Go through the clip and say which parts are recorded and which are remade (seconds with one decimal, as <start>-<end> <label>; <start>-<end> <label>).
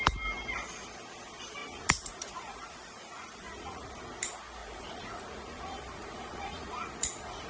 0.0-1.6 recorded; 1.6-4.0 remade; 4.0-4.6 recorded; 4.6-7.5 remade